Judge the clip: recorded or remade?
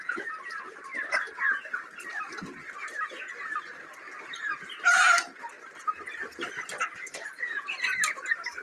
recorded